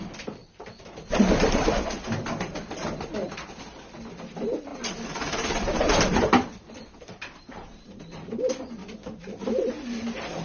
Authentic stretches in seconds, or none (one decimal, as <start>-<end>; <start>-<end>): 0.0-0.4; 1.7-4.7; 8.4-8.8